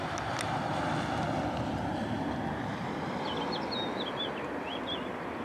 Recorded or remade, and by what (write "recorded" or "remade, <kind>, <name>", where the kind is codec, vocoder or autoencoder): recorded